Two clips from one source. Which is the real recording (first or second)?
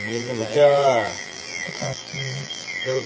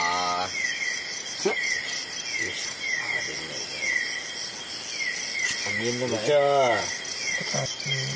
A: second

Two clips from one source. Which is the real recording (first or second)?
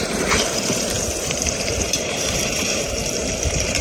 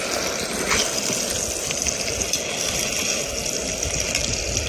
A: second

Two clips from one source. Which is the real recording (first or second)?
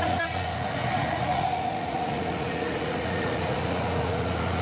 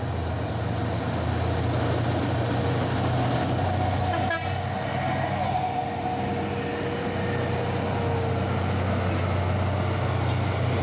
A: second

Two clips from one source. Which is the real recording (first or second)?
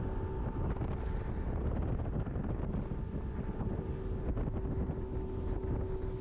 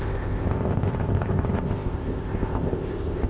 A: first